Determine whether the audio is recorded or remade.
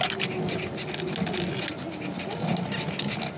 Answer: recorded